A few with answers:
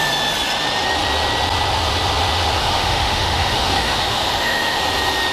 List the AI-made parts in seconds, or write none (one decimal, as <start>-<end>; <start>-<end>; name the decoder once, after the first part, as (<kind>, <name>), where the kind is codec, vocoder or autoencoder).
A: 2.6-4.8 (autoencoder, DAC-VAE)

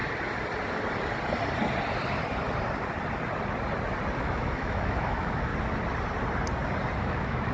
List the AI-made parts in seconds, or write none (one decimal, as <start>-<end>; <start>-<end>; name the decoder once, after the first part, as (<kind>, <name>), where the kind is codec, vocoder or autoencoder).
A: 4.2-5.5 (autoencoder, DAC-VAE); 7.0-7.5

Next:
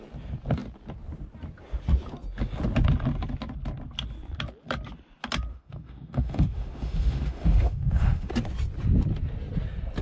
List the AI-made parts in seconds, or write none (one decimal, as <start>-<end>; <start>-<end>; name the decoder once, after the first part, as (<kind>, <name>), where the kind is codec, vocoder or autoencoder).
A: 5.5-8.3 (autoencoder, DAC-VAE)

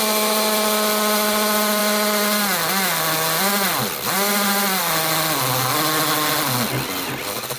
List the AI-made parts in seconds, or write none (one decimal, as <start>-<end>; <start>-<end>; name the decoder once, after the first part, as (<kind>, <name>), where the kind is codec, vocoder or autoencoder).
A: none

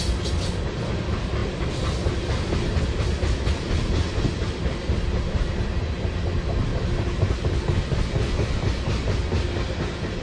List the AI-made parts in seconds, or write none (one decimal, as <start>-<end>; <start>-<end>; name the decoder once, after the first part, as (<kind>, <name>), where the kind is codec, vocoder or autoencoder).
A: none

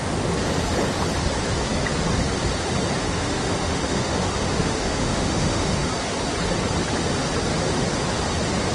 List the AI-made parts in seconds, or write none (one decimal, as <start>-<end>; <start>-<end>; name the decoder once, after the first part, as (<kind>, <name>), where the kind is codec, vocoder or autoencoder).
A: 3.0-5.9 (autoencoder, DAC-VAE)